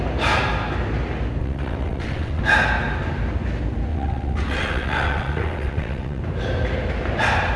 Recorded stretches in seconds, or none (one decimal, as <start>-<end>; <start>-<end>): 0.0-1.4; 2.4-3.9; 6.2-7.6